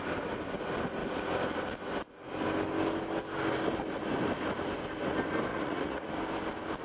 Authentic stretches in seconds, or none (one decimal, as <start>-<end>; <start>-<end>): 0.0-5.5; 6.1-6.8